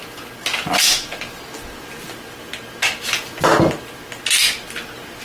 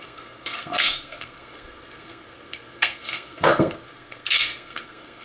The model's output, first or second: second